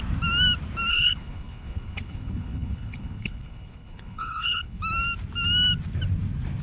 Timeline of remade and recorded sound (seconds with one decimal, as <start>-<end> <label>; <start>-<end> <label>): 0.0-0.9 recorded; 0.9-4.8 remade; 4.8-6.6 recorded